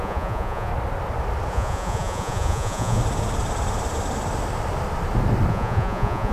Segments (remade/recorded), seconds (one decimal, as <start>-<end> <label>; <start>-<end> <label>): 0.0-0.7 remade; 0.7-1.5 recorded; 1.5-3.0 remade; 3.0-5.5 recorded; 5.5-6.3 remade